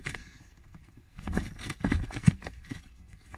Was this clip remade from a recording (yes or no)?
yes